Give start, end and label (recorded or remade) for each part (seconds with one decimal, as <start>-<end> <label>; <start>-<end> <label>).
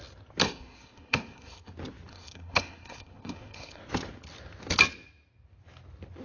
0.0-0.4 recorded; 0.4-1.7 remade; 1.7-2.1 recorded; 2.1-3.8 remade; 3.8-6.2 recorded